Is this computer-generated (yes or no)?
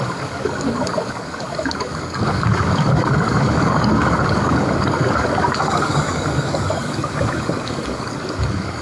yes